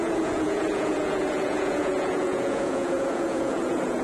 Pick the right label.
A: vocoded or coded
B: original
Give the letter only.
A